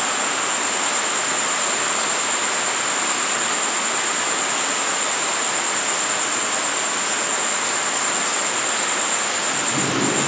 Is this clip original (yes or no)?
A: yes